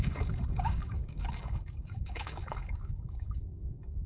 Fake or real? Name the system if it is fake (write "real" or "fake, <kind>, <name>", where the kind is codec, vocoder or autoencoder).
fake, codec, DAC